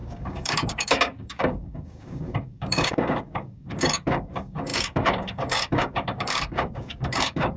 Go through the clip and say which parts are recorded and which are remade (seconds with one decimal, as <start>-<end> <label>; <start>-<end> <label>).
0.0-7.6 remade